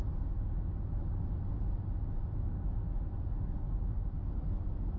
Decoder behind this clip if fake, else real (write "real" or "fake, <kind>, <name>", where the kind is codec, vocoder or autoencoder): real